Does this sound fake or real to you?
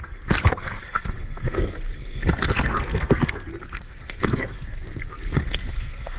fake